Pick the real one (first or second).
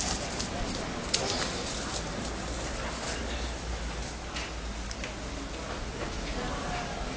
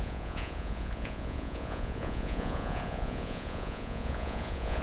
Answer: first